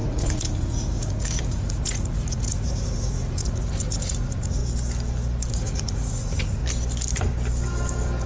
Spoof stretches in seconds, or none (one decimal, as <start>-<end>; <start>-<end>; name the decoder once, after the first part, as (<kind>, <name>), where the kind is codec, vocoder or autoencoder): 0.0-4.6 (vocoder, Vocos); 5.5-6.6